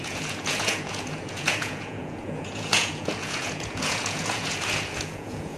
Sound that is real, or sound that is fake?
fake